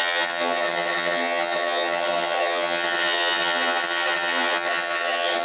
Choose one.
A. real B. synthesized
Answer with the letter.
B